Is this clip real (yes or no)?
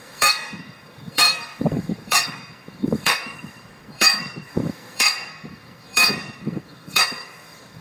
no